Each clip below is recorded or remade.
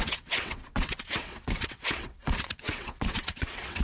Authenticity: remade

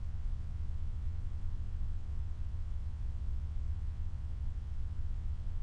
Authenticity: remade